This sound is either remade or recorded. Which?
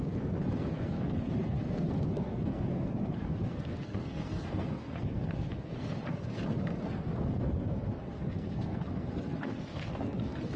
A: remade